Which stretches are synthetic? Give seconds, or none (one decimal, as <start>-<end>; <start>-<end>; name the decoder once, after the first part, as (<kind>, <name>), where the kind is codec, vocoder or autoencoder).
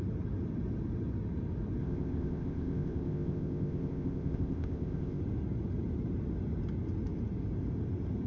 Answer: 1.8-5.2 (codec, ZipCodec)